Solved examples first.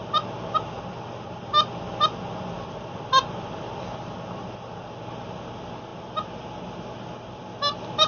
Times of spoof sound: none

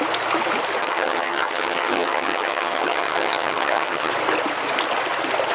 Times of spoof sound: 0.8-4.1

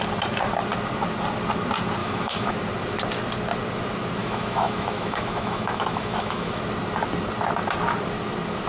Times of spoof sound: 2.0-2.5; 4.2-6.6

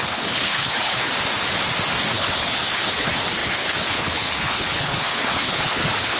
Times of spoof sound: 0.0-1.1; 2.0-6.2

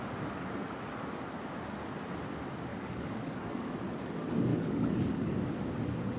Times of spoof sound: 2.7-3.9; 4.5-5.5

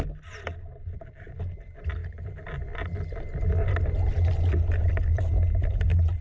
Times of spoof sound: none

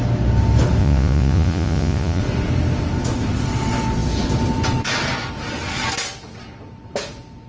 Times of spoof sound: 0.8-2.2

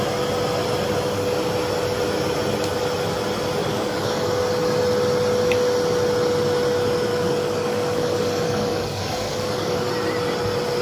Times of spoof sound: 3.6-4.4; 7.1-9.9